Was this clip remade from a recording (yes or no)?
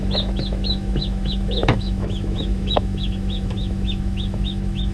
yes